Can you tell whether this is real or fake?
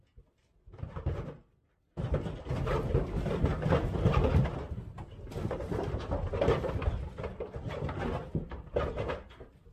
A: real